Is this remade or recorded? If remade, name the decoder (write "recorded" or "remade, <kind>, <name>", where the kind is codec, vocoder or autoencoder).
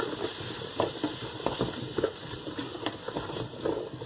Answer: recorded